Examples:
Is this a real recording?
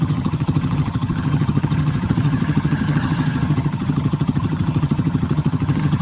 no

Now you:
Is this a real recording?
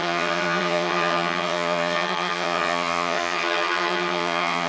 no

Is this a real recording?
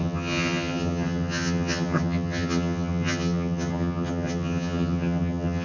no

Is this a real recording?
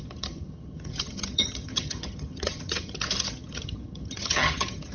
no